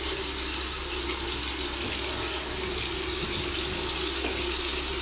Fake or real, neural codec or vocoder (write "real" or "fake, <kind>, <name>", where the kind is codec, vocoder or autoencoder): real